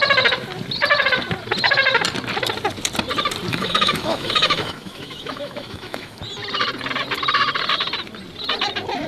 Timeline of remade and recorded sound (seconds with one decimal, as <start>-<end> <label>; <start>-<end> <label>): 0.0-3.5 recorded; 3.5-6.2 remade; 6.2-9.1 recorded